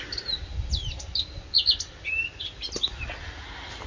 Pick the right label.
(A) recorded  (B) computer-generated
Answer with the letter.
A